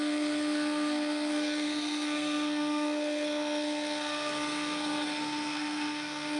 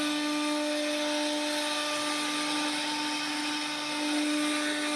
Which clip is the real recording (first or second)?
second